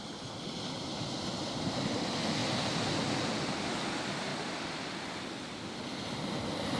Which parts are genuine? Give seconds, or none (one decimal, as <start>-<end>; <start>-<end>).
0.0-2.4; 3.3-4.3; 5.0-6.8